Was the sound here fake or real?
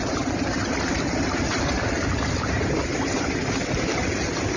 real